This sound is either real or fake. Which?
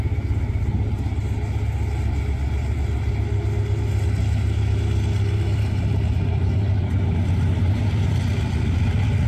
real